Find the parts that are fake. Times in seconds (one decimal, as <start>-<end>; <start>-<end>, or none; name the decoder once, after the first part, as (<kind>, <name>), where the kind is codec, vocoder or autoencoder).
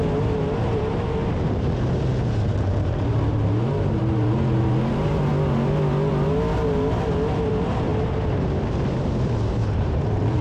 0.0-4.0 (vocoder, BigVGAN v2); 4.6-5.3; 7.5-10.4